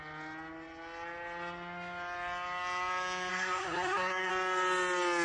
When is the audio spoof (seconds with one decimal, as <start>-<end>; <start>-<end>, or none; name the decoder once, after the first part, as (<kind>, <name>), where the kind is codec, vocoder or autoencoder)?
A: 3.3-4.3 (codec, SNAC)